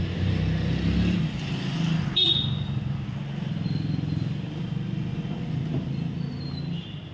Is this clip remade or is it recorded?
recorded